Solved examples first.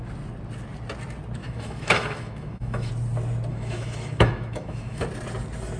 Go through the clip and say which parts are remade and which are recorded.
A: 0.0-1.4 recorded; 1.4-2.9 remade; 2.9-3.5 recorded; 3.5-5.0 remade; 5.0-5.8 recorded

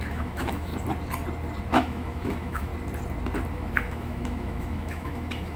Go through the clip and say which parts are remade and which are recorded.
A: 0.0-0.7 remade; 0.7-1.7 recorded; 1.7-2.7 remade; 2.7-3.5 recorded; 3.5-5.6 remade

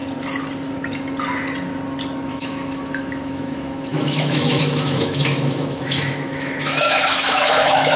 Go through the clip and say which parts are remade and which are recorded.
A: 0.0-2.3 recorded; 2.3-8.0 remade

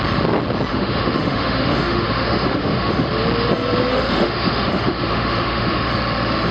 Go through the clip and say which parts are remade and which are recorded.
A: 0.0-0.7 recorded; 0.7-3.1 remade; 3.1-3.9 recorded; 3.9-5.9 remade; 5.9-6.5 recorded

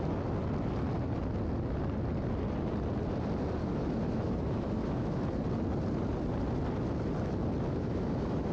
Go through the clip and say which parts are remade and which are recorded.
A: 0.0-3.6 recorded; 3.6-5.2 remade; 5.2-7.7 recorded; 7.7-8.5 remade

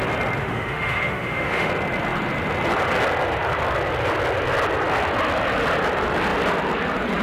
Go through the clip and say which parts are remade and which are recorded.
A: 0.0-0.4 recorded; 0.4-1.7 remade; 1.7-7.2 recorded

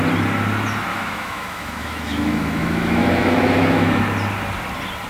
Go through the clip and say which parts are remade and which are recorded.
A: 0.0-0.9 recorded; 0.9-4.0 remade; 4.0-5.1 recorded

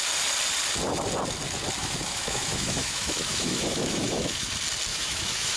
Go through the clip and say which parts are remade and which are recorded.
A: 0.0-1.8 recorded; 1.8-4.5 remade; 4.5-4.9 recorded; 4.9-5.6 remade